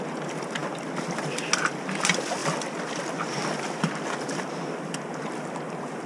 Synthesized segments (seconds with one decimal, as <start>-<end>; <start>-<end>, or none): 2.4-4.4